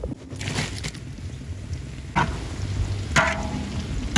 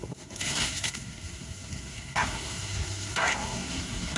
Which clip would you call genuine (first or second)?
first